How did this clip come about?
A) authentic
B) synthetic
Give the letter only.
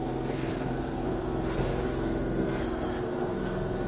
B